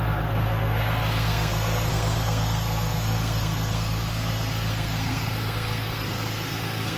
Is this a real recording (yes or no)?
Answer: no